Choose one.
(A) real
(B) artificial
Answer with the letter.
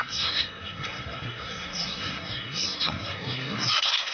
B